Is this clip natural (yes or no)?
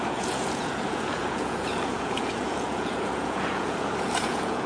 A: no